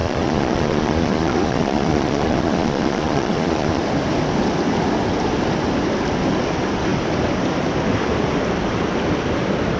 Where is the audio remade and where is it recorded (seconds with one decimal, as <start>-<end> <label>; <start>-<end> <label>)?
0.0-3.8 remade; 3.8-9.8 recorded